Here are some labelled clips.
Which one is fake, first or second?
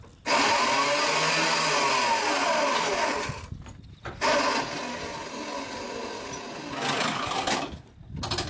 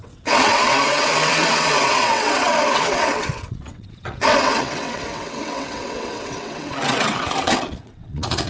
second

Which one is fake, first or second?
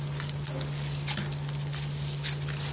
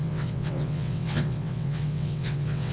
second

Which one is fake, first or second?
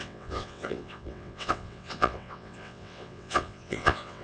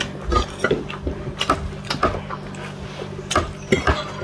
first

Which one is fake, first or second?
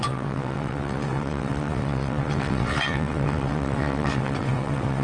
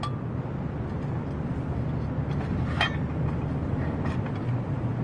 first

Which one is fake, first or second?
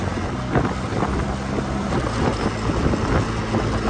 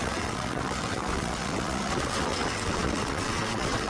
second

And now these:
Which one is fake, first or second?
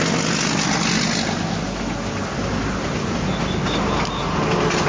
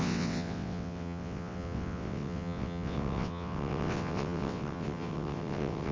second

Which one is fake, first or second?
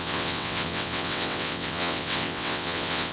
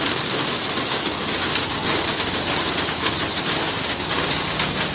first